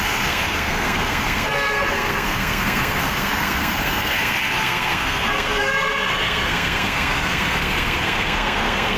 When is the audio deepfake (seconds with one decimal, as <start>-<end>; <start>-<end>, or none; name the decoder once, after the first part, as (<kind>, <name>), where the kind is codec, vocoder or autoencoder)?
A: 0.0-9.0 (codec, SNAC)